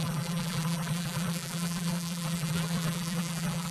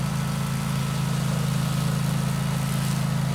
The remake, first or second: first